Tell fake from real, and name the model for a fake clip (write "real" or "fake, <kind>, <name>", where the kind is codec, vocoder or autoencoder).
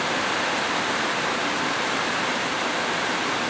real